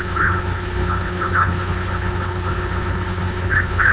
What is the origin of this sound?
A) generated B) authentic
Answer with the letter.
A